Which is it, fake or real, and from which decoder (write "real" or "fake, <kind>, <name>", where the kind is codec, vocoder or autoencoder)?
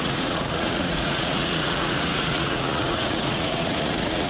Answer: fake, vocoder, Vocos